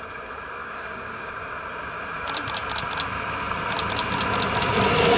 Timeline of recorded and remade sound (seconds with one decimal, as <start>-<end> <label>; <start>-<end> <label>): 0.0-0.6 recorded; 0.6-1.3 remade; 1.3-5.2 recorded